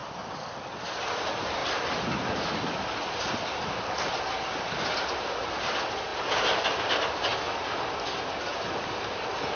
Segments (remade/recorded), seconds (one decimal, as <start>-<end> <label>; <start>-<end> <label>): 0.0-6.1 recorded; 6.1-6.6 remade; 6.6-9.6 recorded